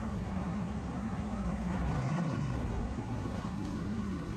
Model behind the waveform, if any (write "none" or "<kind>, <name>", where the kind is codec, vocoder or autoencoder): codec, SNAC